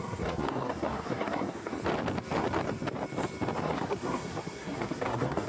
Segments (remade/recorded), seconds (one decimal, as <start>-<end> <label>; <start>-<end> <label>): 0.0-1.7 remade; 1.7-3.6 recorded; 3.6-5.5 remade